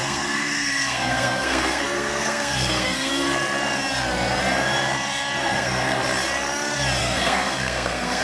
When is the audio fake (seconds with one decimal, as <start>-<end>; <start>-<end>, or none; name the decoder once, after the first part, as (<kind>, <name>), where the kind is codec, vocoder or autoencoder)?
0.0-3.1 (codec, SNAC); 5.4-6.0; 7.0-8.2